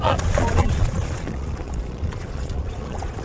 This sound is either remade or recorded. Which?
remade